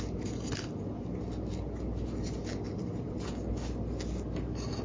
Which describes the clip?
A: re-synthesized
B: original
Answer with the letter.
B